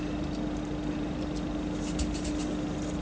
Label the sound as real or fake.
real